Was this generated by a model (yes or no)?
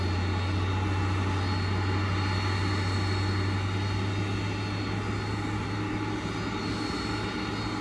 no